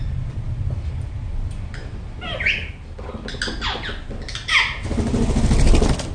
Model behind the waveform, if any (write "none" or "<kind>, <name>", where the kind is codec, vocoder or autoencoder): none